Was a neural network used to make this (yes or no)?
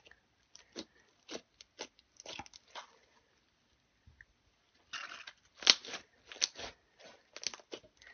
no